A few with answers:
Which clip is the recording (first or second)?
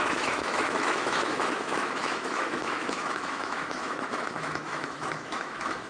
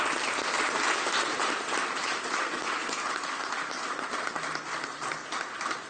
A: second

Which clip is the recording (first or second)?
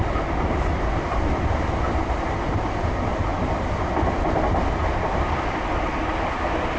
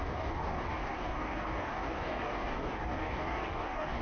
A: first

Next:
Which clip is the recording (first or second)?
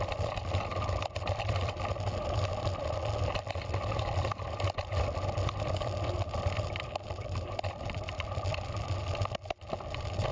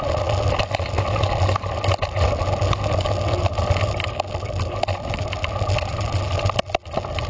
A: second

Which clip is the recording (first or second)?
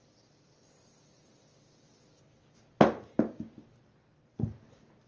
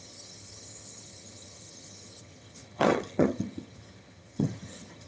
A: first